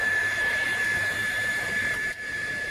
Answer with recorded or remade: remade